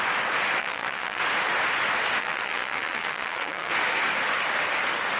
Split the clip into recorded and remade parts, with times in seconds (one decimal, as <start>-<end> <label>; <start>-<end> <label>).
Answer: 0.0-0.6 recorded; 0.6-1.2 remade; 1.2-2.2 recorded; 2.2-3.7 remade; 3.7-5.2 recorded